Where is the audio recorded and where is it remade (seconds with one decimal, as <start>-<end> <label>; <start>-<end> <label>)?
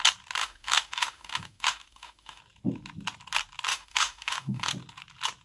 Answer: 0.0-0.4 recorded; 0.4-2.4 remade; 2.4-3.7 recorded; 3.7-4.7 remade; 4.7-5.4 recorded